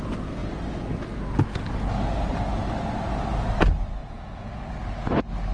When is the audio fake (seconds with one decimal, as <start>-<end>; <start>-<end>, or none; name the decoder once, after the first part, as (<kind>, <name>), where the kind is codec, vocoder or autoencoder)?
4.0-4.7 (vocoder, Vocos)